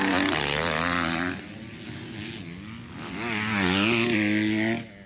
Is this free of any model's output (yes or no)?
yes